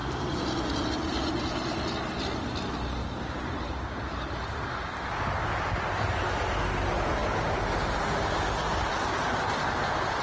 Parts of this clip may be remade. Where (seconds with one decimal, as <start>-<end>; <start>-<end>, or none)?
0.0-1.9; 3.0-4.4